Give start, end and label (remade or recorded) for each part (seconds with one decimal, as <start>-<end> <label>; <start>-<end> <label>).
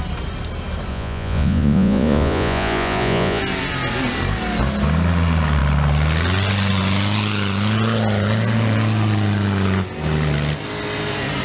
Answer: 0.0-0.9 recorded; 0.9-3.4 remade; 3.4-11.4 recorded